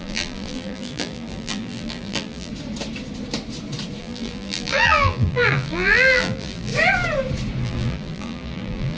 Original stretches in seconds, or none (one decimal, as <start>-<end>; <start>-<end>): 2.5-4.0; 6.7-7.6